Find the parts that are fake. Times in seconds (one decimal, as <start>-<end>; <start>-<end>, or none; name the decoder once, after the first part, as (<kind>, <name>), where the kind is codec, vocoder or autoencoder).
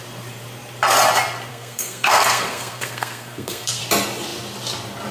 1.5-3.8 (codec, SNAC)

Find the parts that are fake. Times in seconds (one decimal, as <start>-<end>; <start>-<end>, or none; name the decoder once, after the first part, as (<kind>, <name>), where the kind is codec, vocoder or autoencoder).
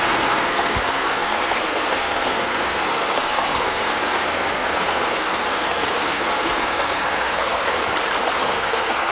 0.0-7.8 (codec, SNAC); 8.4-9.1